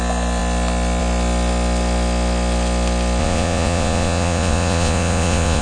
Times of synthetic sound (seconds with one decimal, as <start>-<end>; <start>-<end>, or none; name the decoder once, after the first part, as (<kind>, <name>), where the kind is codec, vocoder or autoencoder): 3.2-5.6 (vocoder, Vocos)